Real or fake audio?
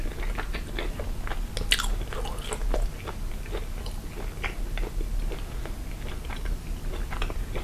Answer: real